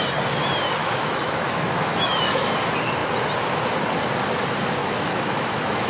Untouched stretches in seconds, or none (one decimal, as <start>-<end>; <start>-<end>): 0.0-0.8; 2.5-4.8